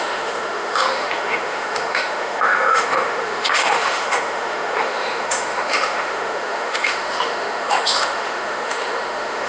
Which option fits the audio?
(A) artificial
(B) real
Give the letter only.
A